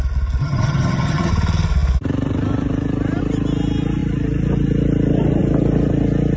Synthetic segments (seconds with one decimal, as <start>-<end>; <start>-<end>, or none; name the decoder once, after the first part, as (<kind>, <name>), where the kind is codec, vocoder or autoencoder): 0.4-1.3 (vocoder, HiFi-GAN)